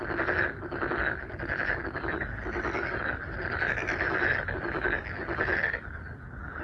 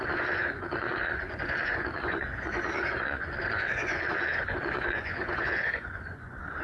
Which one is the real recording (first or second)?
first